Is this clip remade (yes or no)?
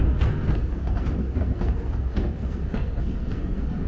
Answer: yes